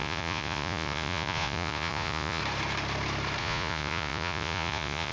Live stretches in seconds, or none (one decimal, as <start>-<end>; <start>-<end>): 2.4-3.4